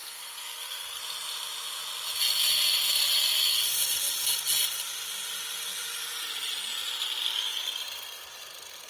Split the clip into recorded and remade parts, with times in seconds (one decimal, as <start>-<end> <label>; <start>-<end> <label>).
0.0-1.0 remade; 1.0-8.9 recorded